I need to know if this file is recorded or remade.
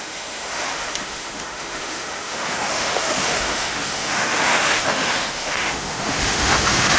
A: remade